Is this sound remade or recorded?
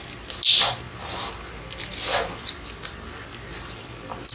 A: recorded